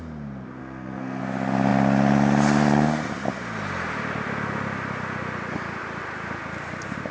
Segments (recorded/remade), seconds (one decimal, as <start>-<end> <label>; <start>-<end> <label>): 0.0-0.6 recorded; 0.6-1.2 remade; 1.2-7.1 recorded